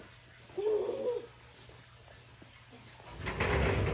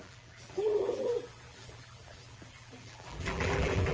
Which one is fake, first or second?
second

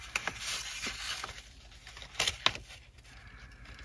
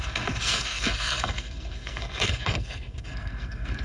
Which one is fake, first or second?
second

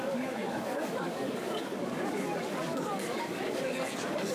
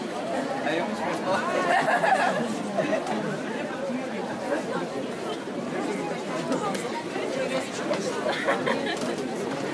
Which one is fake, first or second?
first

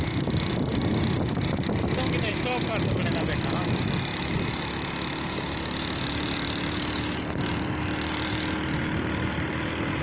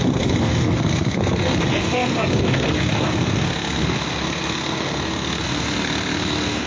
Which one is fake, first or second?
second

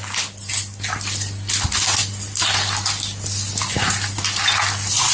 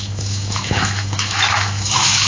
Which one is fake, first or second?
second